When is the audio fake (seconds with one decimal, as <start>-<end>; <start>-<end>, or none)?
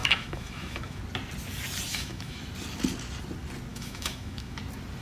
0.0-1.0; 1.9-2.4; 3.7-4.6